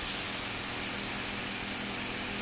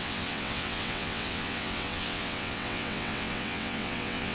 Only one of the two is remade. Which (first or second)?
second